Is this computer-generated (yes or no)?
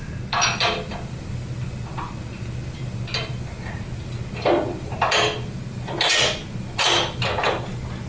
no